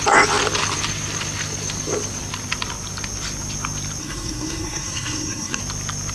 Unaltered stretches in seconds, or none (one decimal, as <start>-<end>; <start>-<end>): 0.0-4.0; 5.6-6.1